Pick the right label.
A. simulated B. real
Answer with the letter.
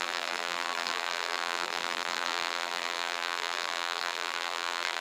A